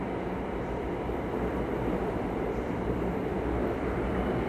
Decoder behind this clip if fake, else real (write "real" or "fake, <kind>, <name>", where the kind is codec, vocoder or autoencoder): fake, vocoder, BigVGAN v2